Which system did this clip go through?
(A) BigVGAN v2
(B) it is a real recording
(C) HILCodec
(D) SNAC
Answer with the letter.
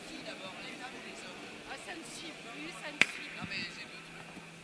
B